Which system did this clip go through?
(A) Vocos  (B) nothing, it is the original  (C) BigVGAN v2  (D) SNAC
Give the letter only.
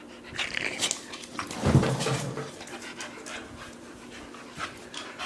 B